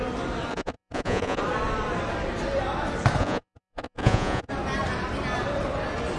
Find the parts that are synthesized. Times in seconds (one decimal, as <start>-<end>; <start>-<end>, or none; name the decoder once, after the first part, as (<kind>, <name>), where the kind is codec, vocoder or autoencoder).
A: 0.5-1.4 (vocoder, Vocos); 3.2-4.5